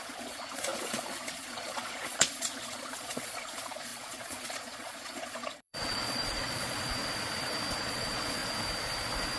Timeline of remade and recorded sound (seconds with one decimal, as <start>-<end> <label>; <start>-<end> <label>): 0.0-7.0 remade; 7.0-7.7 recorded; 7.7-8.4 remade; 8.4-9.4 recorded